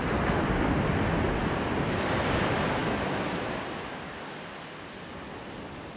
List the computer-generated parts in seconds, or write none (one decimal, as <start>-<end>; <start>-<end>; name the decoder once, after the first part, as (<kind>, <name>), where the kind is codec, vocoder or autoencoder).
none